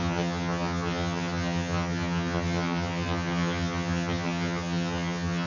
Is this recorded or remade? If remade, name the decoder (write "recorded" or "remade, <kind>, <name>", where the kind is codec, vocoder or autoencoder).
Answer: remade, vocoder, HiFi-GAN